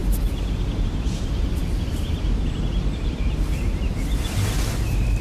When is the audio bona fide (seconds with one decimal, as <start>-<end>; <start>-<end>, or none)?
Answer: 1.6-4.7